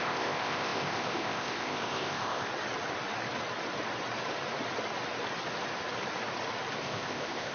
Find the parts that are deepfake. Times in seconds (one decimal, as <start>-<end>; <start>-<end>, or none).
0.0-2.5; 6.8-7.5